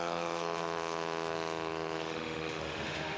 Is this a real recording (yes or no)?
no